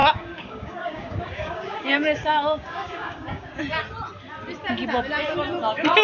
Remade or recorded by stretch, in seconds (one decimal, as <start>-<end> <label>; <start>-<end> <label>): 0.0-3.6 remade; 3.6-6.0 recorded